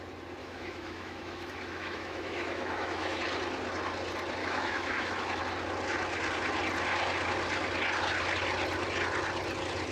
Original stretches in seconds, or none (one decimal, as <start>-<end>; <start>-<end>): 0.0-0.4; 3.2-4.4; 5.4-9.9